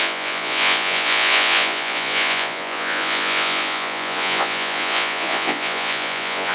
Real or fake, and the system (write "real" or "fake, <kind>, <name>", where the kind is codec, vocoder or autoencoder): fake, vocoder, Vocos